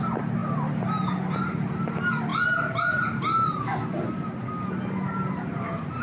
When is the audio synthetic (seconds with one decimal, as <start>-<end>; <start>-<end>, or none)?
none